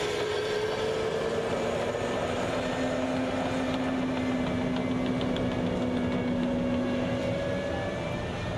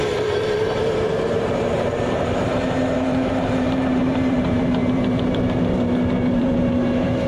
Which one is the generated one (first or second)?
second